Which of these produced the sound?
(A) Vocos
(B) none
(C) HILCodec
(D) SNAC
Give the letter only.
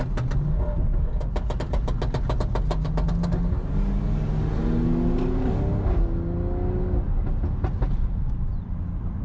B